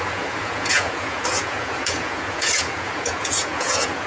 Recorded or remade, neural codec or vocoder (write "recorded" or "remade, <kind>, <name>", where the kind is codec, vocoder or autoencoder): remade, vocoder, Vocos